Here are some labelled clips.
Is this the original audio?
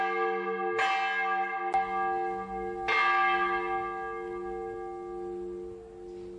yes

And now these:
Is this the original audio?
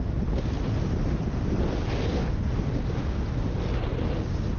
yes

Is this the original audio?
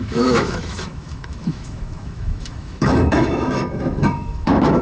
no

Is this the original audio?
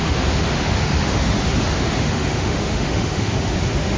no